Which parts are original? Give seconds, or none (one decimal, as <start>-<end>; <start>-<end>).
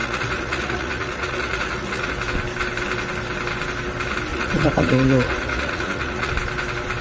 2.1-4.3; 6.3-7.0